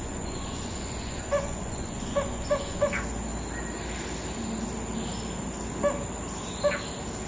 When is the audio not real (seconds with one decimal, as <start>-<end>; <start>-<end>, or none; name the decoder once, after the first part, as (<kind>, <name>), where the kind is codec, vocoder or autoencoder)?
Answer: 0.0-2.9 (vocoder, Vocos)